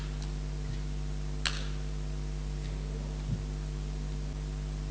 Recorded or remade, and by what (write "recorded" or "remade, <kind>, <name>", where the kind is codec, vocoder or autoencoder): recorded